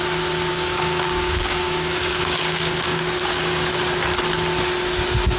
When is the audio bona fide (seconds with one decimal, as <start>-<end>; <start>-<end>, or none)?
0.0-0.5; 3.7-5.4